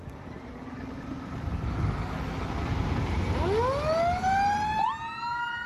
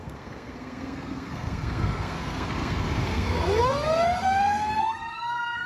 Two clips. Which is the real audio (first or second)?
first